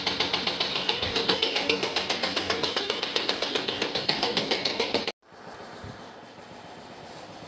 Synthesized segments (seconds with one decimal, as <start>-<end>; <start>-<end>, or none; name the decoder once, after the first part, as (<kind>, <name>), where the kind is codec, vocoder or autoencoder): 0.7-5.0 (codec, DAC)